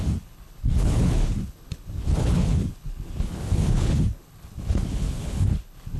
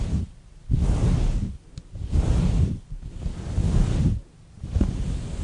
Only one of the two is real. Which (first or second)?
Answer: second